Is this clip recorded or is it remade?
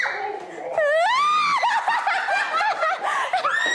recorded